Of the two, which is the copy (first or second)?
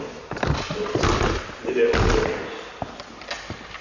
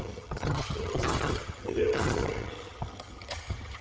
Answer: second